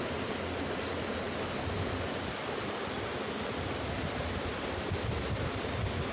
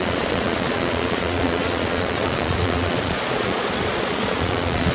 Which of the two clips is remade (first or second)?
second